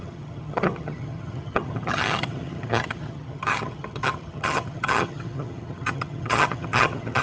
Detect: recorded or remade remade